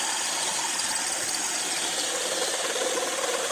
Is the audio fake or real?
real